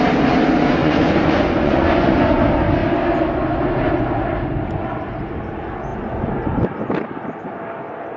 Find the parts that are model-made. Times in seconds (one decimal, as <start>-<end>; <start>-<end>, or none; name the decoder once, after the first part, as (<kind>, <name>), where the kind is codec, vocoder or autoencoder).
0.8-2.4 (vocoder, Vocos)